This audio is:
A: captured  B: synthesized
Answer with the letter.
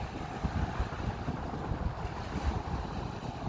A